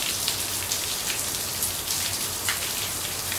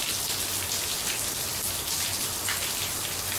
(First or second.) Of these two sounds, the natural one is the second